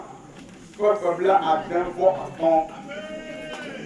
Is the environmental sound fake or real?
real